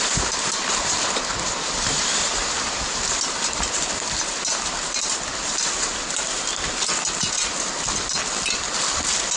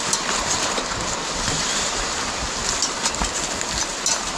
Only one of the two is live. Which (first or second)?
second